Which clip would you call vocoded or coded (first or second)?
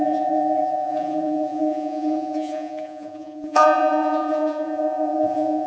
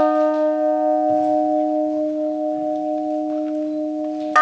first